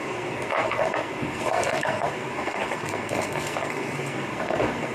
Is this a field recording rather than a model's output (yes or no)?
no